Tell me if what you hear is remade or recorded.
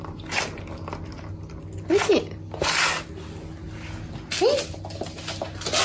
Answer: recorded